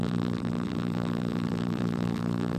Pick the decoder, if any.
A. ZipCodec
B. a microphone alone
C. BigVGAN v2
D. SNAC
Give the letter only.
C